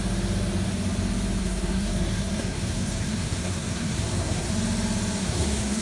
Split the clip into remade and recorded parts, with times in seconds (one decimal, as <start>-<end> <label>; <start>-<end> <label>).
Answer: 0.0-1.4 recorded; 1.4-4.5 remade; 4.5-5.2 recorded; 5.2-5.8 remade